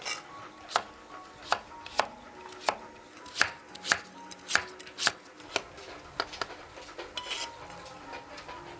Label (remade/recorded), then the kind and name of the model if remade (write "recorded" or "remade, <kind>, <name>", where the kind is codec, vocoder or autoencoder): recorded